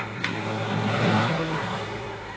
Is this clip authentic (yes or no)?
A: no